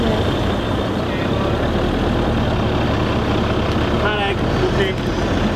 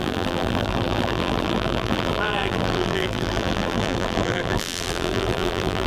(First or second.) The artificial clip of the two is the second